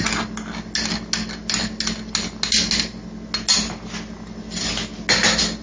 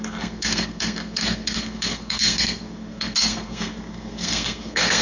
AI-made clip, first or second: second